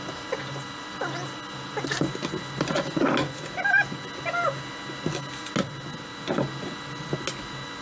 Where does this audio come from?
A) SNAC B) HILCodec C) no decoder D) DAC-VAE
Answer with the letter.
C